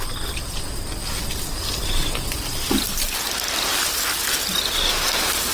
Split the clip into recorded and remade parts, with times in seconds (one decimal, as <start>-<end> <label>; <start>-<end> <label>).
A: 0.0-1.0 recorded; 1.0-3.3 remade; 3.3-5.5 recorded